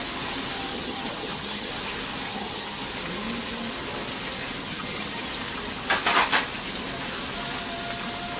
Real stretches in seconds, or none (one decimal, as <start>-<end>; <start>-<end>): 0.0-0.7; 1.7-2.3; 2.8-4.6; 5.3-8.4